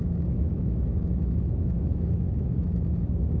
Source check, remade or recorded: remade